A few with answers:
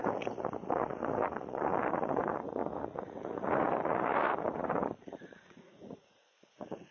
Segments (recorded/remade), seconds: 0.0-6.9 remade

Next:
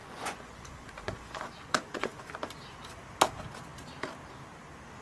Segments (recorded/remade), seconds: 0.0-2.3 remade; 2.3-5.0 recorded

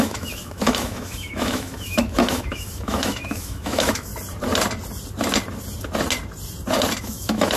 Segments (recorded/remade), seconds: 0.0-4.1 remade; 4.1-7.0 recorded; 7.0-7.6 remade

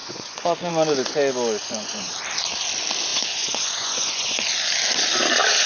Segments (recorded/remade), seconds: 0.0-0.7 remade; 0.7-1.6 recorded; 1.6-2.1 remade; 2.1-3.1 recorded; 3.1-4.4 remade; 4.4-5.7 recorded